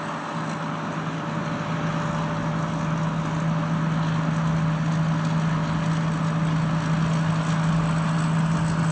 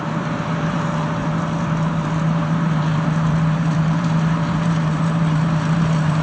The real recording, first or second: first